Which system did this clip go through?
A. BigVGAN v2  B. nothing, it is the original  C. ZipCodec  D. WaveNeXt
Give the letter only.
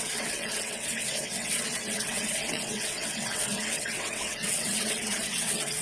D